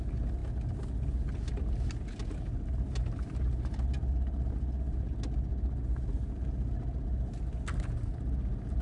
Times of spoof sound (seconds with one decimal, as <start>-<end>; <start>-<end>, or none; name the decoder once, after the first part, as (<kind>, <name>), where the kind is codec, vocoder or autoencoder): none